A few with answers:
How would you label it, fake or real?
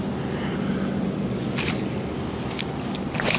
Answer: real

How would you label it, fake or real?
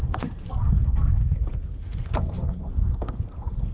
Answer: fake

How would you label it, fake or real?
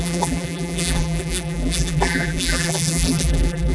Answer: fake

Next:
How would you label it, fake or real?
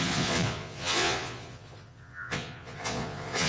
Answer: fake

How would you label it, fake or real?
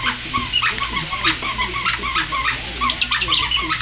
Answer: real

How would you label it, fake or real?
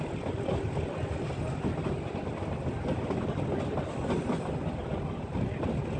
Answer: real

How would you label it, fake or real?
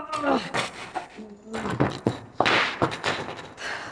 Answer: real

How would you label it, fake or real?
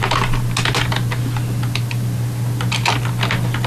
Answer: real